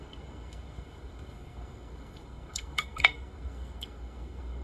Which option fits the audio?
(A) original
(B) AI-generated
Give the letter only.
B